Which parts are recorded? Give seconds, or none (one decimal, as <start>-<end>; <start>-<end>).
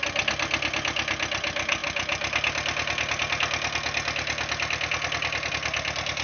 0.0-6.2